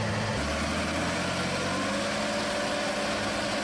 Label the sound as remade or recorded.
recorded